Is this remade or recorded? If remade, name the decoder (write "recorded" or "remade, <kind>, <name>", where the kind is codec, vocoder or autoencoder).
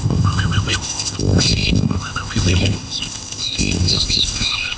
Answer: remade, codec, ZipCodec